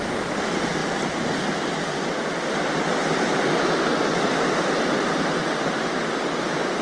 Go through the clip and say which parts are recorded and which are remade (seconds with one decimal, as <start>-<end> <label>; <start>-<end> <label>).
0.0-6.8 recorded